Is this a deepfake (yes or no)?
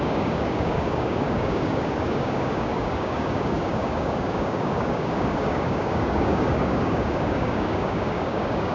yes